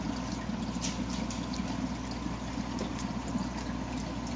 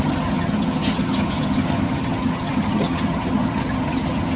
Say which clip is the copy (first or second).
second